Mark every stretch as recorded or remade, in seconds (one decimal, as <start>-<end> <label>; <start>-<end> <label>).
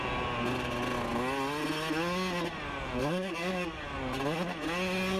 0.0-3.0 recorded; 3.0-3.8 remade; 3.8-5.2 recorded